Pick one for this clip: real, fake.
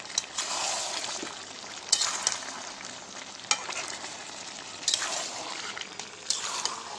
real